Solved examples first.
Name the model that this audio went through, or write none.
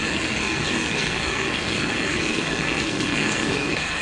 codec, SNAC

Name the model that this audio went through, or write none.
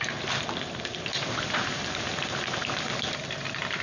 none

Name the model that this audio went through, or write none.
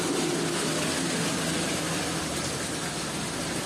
none